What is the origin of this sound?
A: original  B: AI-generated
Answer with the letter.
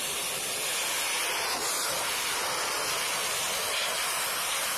A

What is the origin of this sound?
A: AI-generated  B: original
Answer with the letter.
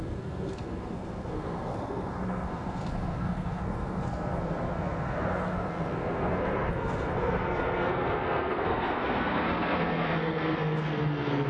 A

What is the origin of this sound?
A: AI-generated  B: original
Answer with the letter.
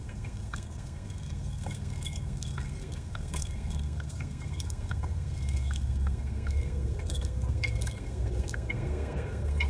A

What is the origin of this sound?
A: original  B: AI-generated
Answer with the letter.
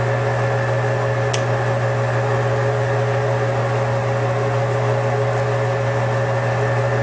A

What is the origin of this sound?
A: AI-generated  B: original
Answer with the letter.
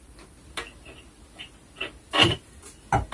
B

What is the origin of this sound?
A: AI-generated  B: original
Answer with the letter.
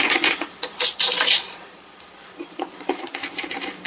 A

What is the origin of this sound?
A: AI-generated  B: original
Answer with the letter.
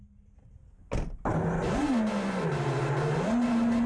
B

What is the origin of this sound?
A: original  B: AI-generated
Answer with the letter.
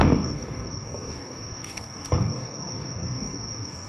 B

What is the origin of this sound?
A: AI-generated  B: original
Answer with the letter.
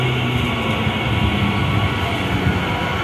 B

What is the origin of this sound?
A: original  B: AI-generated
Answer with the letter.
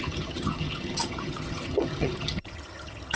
B